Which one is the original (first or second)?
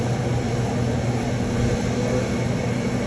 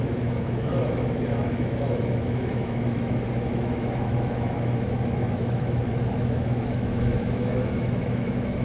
first